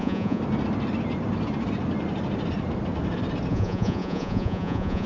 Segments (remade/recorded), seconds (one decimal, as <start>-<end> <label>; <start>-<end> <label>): 0.0-0.4 remade; 0.4-3.5 recorded; 3.5-5.1 remade